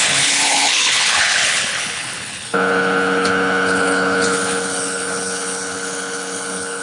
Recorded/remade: remade